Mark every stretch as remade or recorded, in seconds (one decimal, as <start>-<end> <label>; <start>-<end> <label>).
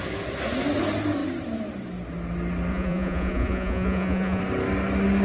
0.0-2.7 recorded; 2.7-4.4 remade; 4.4-5.2 recorded